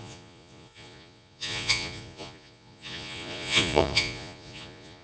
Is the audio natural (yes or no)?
no